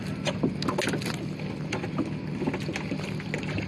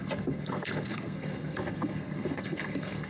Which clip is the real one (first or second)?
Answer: first